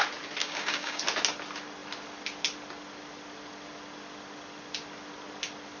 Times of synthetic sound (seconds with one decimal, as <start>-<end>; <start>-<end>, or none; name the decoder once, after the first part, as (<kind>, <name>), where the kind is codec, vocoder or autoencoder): 0.4-1.0 (codec, DAC)